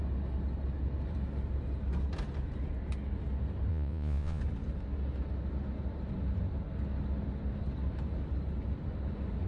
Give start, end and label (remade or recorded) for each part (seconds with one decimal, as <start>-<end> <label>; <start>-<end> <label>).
0.0-3.7 recorded; 3.7-4.4 remade; 4.4-9.5 recorded